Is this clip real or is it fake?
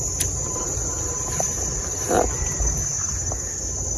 real